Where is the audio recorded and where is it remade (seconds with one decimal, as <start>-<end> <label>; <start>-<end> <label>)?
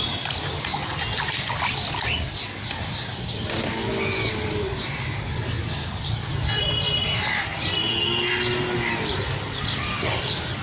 0.0-10.6 recorded